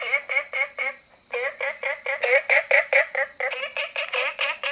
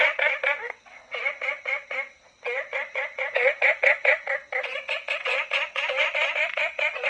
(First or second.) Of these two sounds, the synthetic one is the second